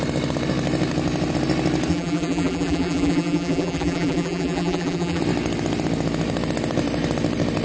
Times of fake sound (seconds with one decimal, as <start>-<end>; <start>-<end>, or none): 1.9-5.2